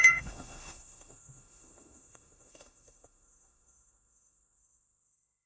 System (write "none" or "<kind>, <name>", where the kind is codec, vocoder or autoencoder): autoencoder, DAC-VAE